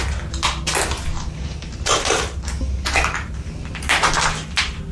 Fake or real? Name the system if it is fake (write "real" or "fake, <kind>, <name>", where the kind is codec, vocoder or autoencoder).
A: real